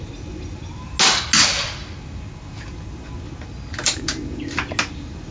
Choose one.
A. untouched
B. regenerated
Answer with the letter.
A